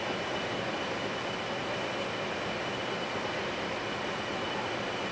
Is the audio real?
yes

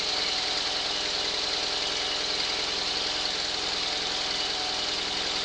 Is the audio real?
yes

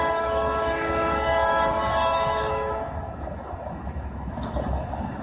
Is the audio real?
no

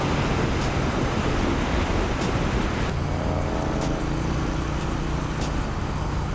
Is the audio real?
yes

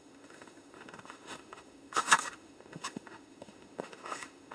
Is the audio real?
no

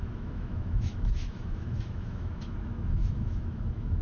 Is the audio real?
no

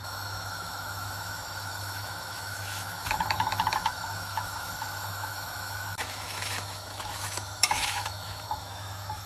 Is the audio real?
no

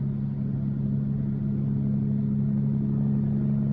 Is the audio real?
yes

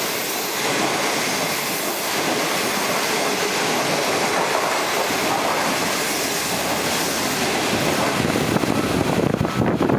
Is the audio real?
yes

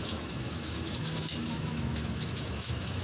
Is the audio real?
no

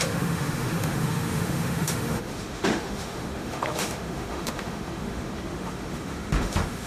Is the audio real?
no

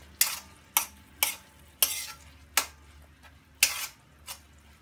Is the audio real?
yes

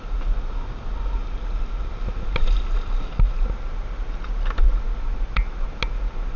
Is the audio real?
yes